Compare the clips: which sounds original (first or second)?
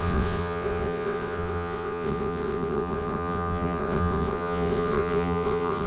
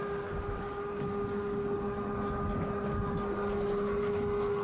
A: second